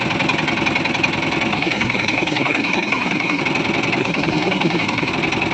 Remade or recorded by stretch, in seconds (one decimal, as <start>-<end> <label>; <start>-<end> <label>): 0.0-1.5 recorded; 1.5-3.4 remade; 3.4-4.0 recorded; 4.0-5.1 remade; 5.1-5.5 recorded